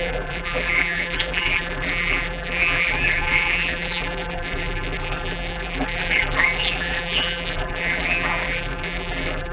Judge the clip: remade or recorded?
remade